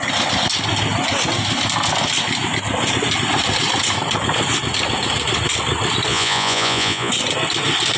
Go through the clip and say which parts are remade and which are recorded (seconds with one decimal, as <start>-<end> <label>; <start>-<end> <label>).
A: 0.0-6.1 recorded; 6.1-7.1 remade; 7.1-8.0 recorded